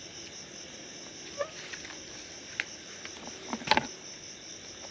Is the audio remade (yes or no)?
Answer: no